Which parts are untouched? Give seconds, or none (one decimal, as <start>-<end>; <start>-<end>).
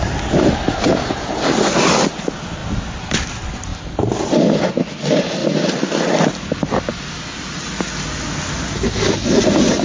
0.0-9.8